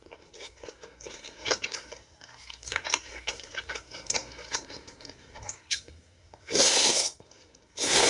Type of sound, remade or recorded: remade